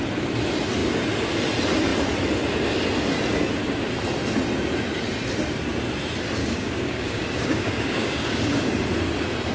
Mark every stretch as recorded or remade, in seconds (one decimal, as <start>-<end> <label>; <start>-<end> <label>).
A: 0.0-6.4 recorded; 6.4-8.7 remade; 8.7-9.5 recorded